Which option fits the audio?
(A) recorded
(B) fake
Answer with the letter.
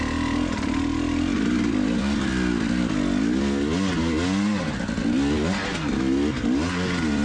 A